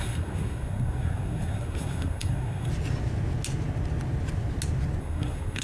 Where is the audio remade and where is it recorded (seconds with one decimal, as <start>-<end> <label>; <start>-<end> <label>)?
0.0-2.7 remade; 2.7-5.0 recorded; 5.0-5.6 remade